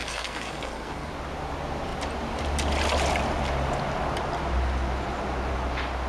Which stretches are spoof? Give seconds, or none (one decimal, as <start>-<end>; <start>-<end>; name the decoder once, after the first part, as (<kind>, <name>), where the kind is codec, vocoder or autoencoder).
0.0-1.1 (codec, SNAC)

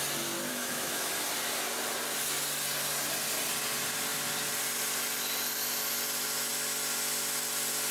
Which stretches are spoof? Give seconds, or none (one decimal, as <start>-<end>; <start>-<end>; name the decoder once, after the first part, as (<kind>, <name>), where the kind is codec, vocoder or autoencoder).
0.5-1.1 (autoencoder, DAC-VAE)

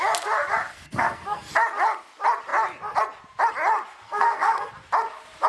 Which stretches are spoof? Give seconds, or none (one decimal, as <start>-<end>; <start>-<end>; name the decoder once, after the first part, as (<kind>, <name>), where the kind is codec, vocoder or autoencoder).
0.7-1.5 (codec, SNAC); 3.9-4.7